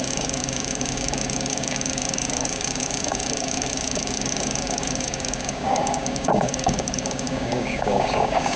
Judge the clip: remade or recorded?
remade